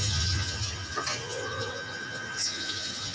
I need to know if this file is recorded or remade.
remade